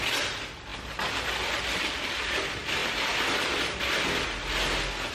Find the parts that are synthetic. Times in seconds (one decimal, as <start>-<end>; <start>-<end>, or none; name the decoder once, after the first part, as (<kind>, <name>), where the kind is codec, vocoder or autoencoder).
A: none